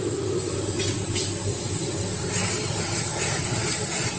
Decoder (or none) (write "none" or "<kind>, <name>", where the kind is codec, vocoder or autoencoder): none